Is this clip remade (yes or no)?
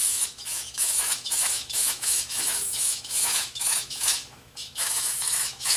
yes